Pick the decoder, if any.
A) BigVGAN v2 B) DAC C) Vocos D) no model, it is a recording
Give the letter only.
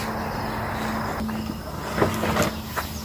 D